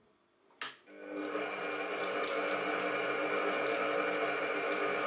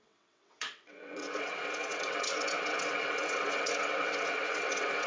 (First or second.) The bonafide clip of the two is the first